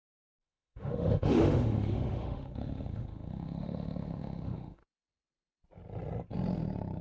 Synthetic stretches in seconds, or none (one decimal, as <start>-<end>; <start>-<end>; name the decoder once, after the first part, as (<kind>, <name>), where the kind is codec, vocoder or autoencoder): 0.0-4.8 (autoencoder, DAC-VAE)

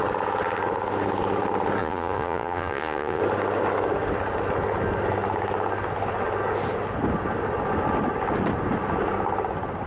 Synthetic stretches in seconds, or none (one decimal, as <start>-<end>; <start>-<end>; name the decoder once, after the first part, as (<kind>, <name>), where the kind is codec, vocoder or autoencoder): 1.8-3.2 (vocoder, Vocos)

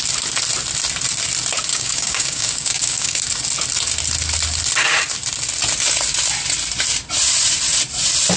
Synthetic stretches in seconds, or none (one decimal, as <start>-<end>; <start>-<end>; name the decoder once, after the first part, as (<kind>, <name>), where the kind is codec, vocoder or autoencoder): 1.7-3.2 (codec, DAC)